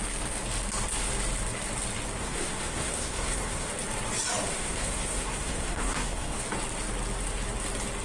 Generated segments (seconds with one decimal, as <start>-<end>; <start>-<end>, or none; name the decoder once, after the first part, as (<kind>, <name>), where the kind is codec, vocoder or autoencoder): 2.2-3.7 (codec, SNAC); 4.5-6.4